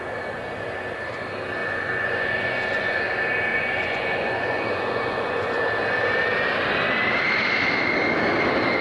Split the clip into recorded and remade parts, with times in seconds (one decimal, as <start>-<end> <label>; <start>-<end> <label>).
0.0-1.6 recorded; 1.6-3.0 remade; 3.0-3.5 recorded; 3.5-5.6 remade; 5.6-8.8 recorded